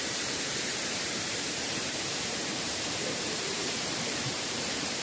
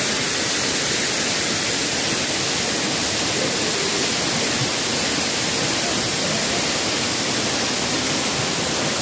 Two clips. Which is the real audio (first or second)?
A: second